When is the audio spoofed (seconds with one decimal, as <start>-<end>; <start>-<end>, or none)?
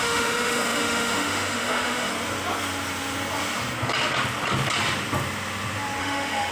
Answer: 0.0-2.1; 6.0-6.5